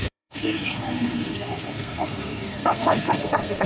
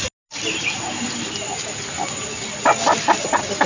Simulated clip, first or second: first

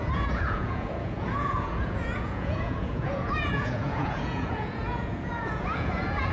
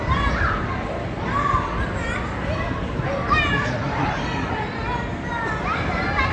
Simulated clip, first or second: first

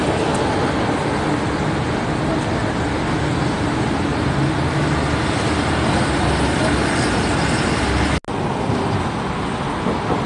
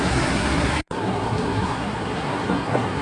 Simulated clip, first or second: second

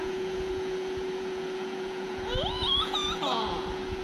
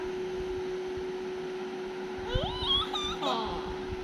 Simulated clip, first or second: first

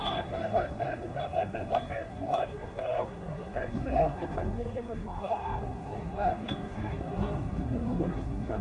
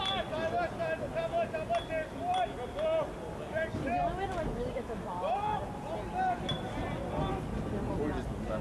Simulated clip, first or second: first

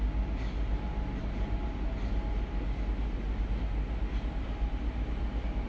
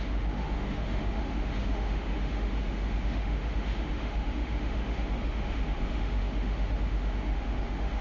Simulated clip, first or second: second